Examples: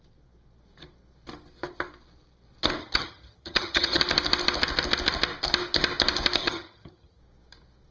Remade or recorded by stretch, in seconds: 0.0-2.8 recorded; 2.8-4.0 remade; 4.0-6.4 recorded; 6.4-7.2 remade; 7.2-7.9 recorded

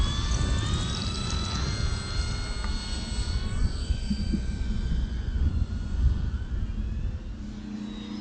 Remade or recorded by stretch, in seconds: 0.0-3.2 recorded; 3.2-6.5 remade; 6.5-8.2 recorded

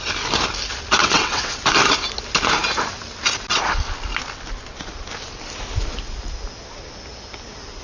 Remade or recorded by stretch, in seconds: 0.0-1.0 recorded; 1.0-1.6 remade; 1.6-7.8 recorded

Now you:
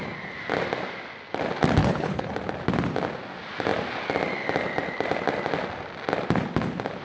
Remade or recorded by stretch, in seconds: 0.0-1.8 recorded; 1.8-2.3 remade; 2.3-7.0 recorded

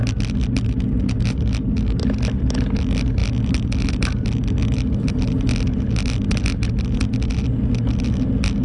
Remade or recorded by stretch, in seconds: 0.0-8.6 recorded

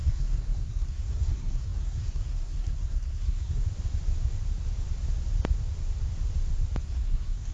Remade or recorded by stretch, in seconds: 0.0-3.6 remade; 3.6-6.8 recorded; 6.8-7.5 remade

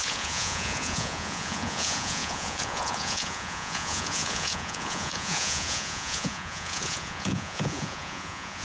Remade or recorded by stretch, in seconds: 0.0-8.6 remade